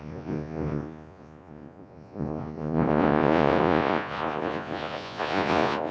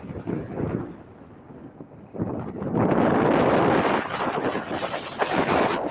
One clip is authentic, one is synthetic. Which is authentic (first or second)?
second